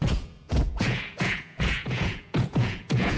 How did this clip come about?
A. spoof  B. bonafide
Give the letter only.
A